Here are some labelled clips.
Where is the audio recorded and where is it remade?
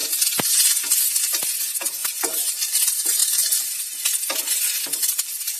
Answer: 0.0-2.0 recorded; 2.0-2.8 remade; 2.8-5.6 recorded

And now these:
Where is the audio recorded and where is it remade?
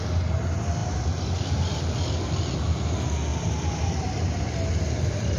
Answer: 0.0-3.3 recorded; 3.3-4.9 remade; 4.9-5.4 recorded